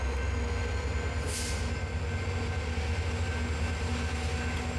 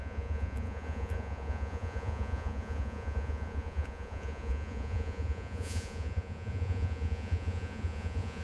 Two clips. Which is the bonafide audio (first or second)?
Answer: first